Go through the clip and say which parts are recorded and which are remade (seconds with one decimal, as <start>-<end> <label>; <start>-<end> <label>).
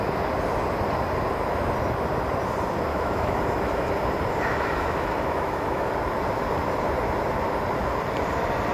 0.0-2.9 recorded; 2.9-3.9 remade; 3.9-4.5 recorded; 4.5-5.9 remade; 5.9-8.7 recorded